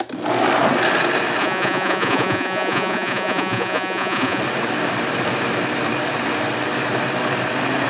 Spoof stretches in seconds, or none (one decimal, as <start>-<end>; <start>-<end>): 1.4-4.4